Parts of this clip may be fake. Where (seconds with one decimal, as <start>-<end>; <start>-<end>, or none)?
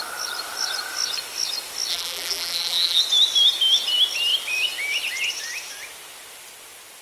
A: 1.9-3.0